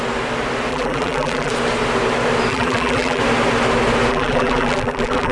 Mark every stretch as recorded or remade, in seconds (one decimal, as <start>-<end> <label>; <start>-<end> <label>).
0.0-0.7 recorded; 0.7-1.5 remade; 1.5-2.5 recorded; 2.5-3.2 remade; 3.2-4.1 recorded; 4.1-5.3 remade